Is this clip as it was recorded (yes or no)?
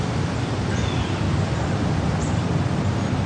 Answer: yes